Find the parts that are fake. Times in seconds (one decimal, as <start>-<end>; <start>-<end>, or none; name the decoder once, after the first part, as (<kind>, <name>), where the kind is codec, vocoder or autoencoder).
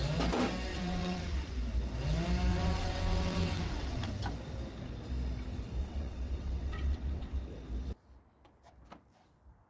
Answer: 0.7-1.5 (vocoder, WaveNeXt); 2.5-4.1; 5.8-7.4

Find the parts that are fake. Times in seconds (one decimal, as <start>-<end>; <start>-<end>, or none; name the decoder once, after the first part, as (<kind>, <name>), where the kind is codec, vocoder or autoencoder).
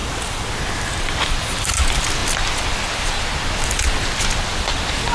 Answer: none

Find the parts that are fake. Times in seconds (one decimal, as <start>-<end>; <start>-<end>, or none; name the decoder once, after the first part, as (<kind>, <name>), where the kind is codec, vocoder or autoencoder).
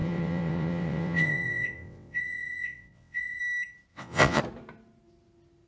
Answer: 0.0-3.4 (vocoder, WaveNeXt); 3.9-4.4